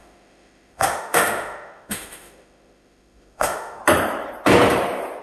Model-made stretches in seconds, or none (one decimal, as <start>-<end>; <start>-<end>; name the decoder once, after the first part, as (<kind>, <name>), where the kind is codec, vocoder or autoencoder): 0.0-3.8 (autoencoder, DAC-VAE)